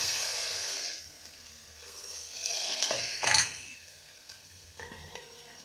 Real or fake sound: fake